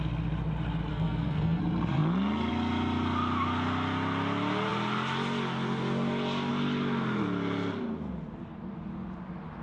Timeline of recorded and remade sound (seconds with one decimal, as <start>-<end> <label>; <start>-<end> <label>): 0.0-0.9 recorded; 0.9-1.6 remade; 1.6-9.6 recorded